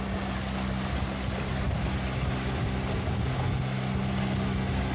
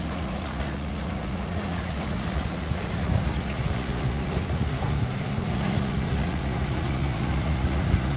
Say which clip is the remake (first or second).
second